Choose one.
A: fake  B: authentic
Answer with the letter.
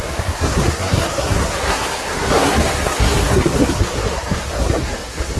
A